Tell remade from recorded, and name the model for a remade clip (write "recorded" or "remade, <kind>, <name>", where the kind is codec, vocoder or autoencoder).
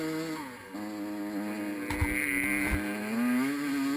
recorded